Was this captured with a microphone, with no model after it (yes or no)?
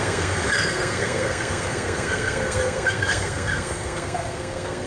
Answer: no